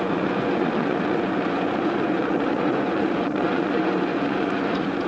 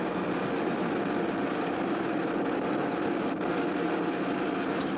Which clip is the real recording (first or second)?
second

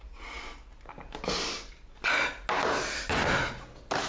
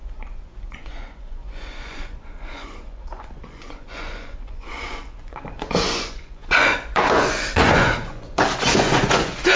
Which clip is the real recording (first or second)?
first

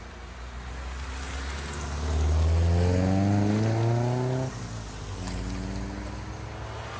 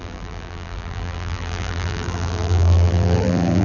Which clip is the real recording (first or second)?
first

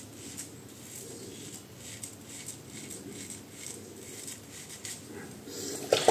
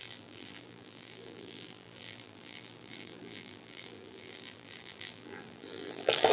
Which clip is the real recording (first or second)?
first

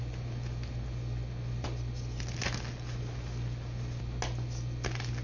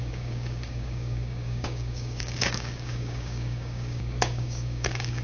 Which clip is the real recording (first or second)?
first